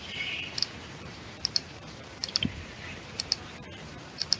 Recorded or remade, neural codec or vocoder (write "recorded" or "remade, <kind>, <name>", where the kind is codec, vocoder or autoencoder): remade, vocoder, BigVGAN v2